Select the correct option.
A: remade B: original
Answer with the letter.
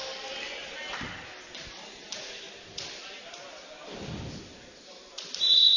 B